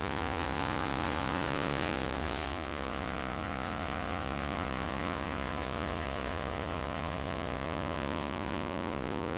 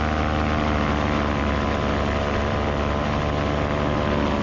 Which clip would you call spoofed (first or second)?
first